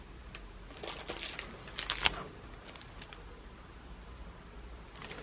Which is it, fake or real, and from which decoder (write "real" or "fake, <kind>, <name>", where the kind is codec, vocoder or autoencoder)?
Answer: real